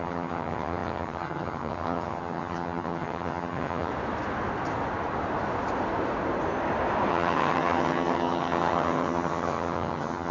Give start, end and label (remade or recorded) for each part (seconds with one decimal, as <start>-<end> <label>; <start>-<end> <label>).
0.0-3.9 remade; 3.9-7.1 recorded; 7.1-10.3 remade